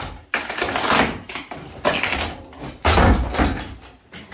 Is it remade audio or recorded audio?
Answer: recorded